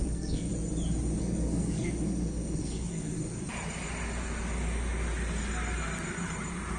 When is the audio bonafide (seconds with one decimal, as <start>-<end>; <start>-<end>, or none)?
0.5-1.2; 3.2-6.8